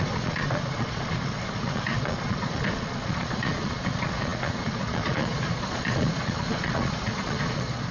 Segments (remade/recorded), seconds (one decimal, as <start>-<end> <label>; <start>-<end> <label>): 0.0-7.9 remade